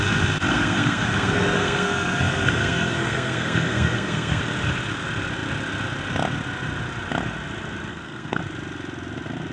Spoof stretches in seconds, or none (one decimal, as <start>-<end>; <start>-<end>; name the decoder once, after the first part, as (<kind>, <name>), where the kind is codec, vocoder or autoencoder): 0.5-4.4 (codec, SNAC); 7.9-8.4